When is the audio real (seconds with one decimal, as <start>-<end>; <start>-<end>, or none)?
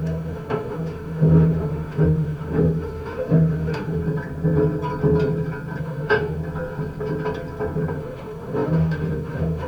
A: 4.0-5.8; 6.4-7.9